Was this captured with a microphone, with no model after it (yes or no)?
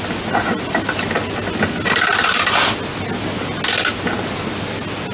yes